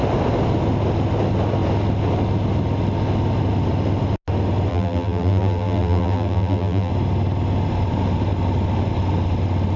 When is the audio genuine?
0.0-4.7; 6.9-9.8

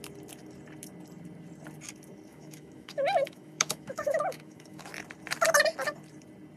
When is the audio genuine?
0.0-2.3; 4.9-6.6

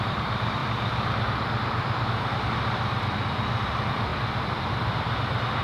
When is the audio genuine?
none

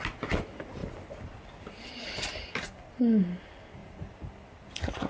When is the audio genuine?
0.0-0.8; 2.9-3.8